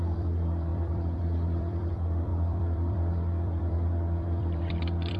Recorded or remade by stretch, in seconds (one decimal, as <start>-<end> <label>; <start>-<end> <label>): 0.0-5.2 remade